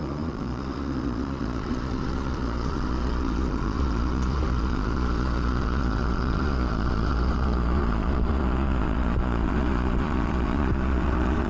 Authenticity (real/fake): fake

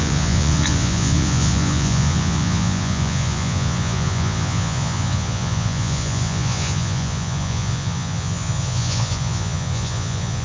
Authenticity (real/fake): fake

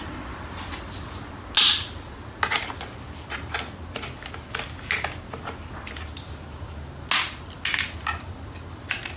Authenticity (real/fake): real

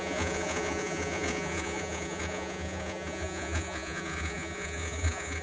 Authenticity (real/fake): fake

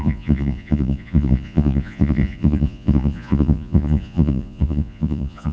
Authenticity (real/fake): fake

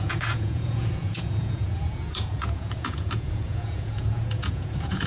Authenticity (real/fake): fake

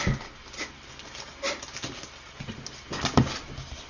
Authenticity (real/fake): real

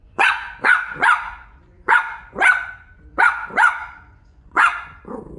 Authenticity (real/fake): fake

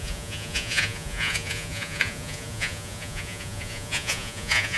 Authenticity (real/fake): fake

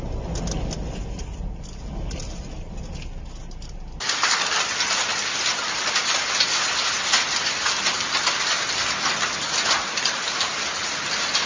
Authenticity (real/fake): real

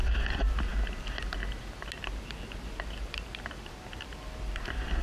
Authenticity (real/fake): real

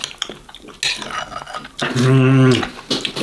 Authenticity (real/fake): real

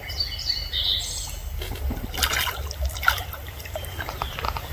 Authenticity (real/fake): real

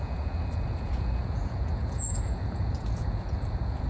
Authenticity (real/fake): fake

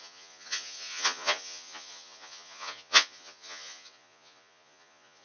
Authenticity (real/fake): fake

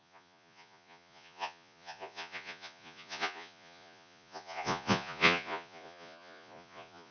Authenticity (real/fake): fake